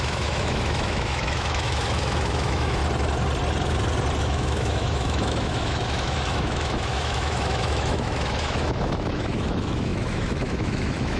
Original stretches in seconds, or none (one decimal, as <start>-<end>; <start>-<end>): 2.8-4.2